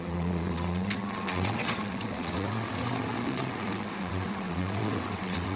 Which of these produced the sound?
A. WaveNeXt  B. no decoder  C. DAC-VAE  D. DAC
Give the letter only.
A